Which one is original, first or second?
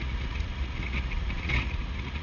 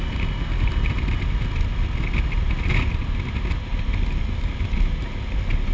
second